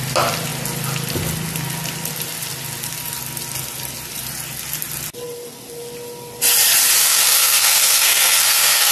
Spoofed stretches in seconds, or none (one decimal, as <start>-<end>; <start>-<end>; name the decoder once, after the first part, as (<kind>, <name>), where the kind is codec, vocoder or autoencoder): 7.0-8.9 (codec, SNAC)